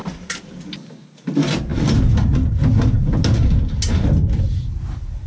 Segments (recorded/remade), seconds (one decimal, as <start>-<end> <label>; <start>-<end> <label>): 0.0-5.3 recorded